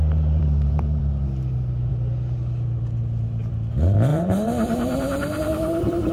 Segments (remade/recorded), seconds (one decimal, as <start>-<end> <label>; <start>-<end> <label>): 0.0-1.0 remade; 1.0-4.1 recorded; 4.1-6.1 remade